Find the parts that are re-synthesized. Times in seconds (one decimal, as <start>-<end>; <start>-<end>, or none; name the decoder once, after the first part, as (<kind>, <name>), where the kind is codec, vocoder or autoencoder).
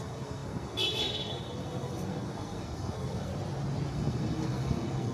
0.0-3.3 (codec, SNAC); 3.9-5.1